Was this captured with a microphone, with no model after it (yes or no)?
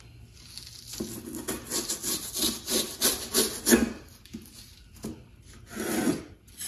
yes